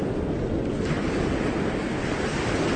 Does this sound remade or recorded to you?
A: recorded